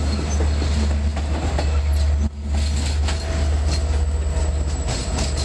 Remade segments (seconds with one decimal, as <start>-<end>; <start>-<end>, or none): none